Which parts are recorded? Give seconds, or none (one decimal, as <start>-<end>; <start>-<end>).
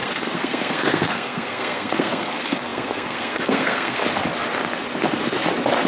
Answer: 4.0-5.9